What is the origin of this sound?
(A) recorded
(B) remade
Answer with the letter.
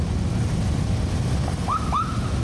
A